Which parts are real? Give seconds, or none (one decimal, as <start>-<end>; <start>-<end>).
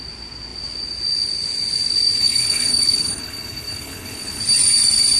0.0-2.2; 4.4-5.2